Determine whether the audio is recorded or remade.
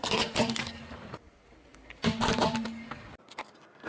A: recorded